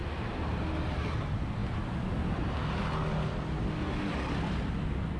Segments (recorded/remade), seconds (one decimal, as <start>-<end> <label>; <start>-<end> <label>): 0.0-5.2 recorded